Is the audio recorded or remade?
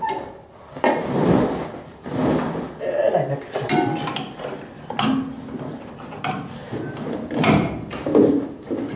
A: recorded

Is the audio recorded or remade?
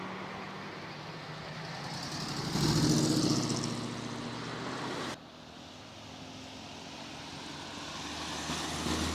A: recorded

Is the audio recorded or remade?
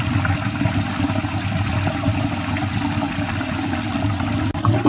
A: recorded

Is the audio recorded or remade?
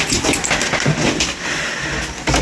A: recorded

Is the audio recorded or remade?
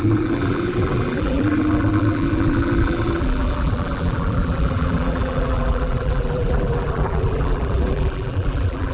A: remade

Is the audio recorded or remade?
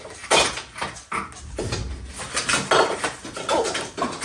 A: recorded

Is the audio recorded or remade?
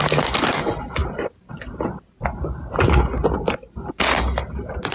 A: recorded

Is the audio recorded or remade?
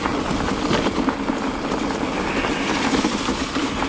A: recorded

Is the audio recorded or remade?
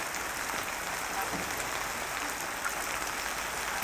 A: recorded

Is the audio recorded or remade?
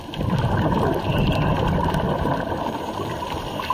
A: remade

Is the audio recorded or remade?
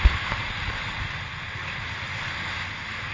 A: recorded